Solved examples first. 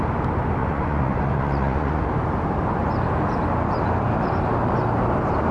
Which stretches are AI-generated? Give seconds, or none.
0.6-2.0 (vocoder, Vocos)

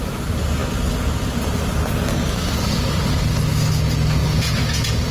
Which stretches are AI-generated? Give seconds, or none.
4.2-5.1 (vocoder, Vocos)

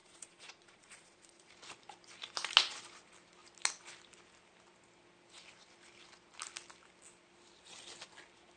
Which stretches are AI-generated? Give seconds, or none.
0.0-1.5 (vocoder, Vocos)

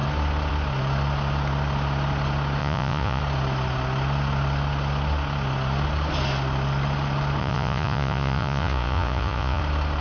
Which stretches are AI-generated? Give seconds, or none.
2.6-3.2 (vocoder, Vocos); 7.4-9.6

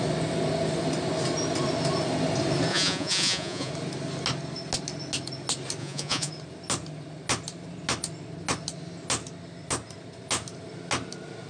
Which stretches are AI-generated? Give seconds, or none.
2.7-3.7 (vocoder, Vocos); 5.8-6.3

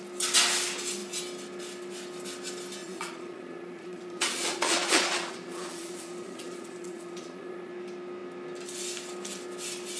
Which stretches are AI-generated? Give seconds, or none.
2.8-7.7 (vocoder, Vocos)

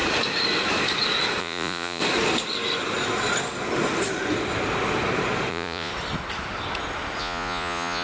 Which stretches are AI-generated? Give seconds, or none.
1.4-2.0 (vocoder, Vocos); 5.5-5.9; 7.2-8.0

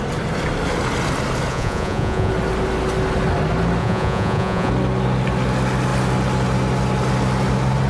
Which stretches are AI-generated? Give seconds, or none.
1.5-2.3 (vocoder, Vocos); 3.8-4.7